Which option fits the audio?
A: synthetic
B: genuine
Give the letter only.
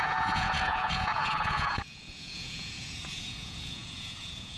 A